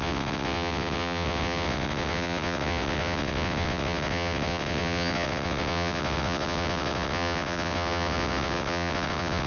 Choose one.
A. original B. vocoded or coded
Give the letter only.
B